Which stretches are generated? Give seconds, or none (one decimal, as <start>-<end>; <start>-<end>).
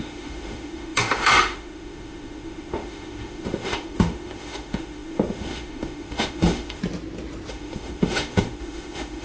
0.0-6.8; 7.5-9.2